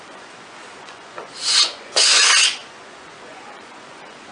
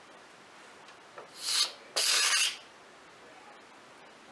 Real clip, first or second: second